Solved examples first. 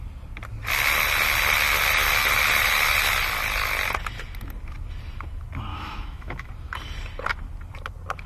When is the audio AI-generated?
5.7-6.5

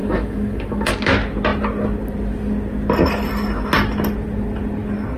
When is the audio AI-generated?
0.0-0.9

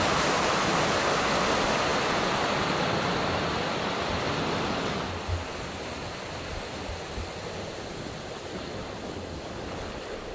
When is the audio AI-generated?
none

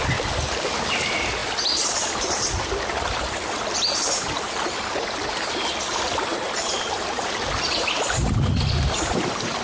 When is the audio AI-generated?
none

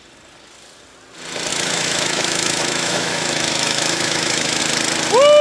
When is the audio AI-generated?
1.5-4.6

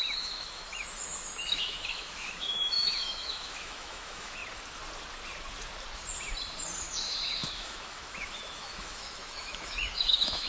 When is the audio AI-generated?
0.0-4.4; 6.8-10.5

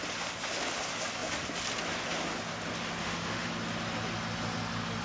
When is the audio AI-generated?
3.0-3.5